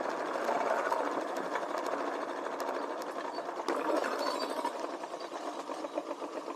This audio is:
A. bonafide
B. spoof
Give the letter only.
A